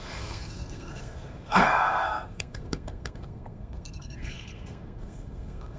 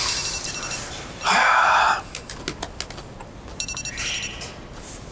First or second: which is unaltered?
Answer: second